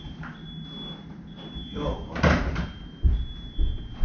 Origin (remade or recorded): recorded